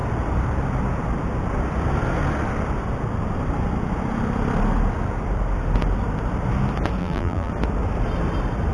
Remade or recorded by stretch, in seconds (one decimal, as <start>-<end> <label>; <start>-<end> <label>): 0.0-7.0 recorded; 7.0-7.5 remade; 7.5-8.7 recorded